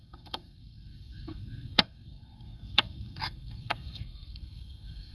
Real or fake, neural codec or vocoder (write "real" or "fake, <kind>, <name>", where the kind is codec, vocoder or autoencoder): fake, codec, SNAC